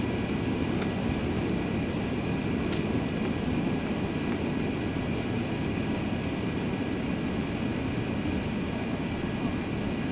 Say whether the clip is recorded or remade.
recorded